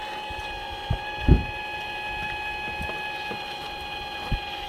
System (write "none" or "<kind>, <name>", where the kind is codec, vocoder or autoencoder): none